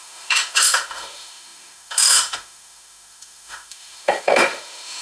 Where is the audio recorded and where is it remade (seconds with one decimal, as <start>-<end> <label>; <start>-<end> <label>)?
0.0-5.0 remade